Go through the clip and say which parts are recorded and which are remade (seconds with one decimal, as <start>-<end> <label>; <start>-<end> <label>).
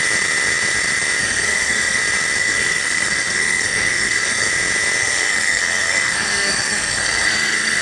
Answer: 0.0-1.2 recorded; 1.2-2.0 remade; 2.0-2.4 recorded; 2.4-4.5 remade; 4.5-5.0 recorded; 5.0-7.8 remade